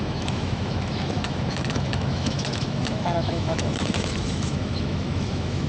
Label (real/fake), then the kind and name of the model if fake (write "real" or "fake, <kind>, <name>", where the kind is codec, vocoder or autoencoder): fake, autoencoder, DAC-VAE